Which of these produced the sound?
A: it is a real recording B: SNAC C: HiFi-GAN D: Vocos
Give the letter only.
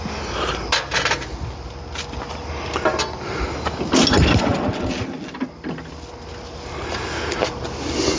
A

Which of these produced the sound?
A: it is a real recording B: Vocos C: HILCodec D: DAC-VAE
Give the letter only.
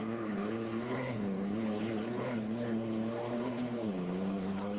C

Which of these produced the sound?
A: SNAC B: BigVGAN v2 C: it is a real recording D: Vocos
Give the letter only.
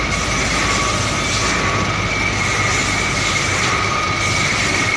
C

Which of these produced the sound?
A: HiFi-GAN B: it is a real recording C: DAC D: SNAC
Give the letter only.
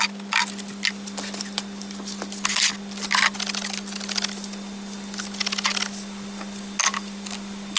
B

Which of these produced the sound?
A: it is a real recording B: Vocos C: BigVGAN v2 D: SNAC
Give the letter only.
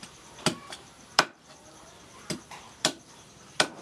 C